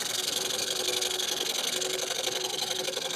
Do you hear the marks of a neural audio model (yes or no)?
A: yes